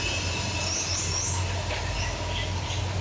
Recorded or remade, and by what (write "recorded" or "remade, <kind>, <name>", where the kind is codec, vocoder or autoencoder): recorded